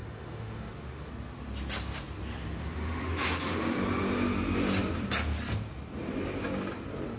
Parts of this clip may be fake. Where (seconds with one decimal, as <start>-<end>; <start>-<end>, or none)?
0.0-1.1; 2.6-3.8